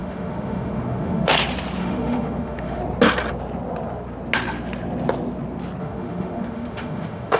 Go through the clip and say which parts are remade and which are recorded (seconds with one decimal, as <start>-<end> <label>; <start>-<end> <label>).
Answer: 0.0-1.3 remade; 1.3-1.8 recorded; 1.8-2.8 remade; 2.8-5.8 recorded; 5.8-7.4 remade